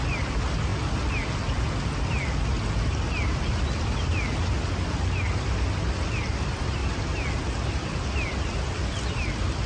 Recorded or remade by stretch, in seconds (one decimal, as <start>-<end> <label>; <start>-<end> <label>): 0.0-9.7 recorded